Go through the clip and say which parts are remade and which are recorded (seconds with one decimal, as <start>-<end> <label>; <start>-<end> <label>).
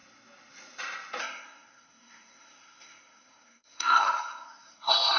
0.0-1.2 recorded; 1.2-5.2 remade